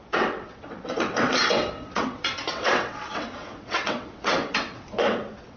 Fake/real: fake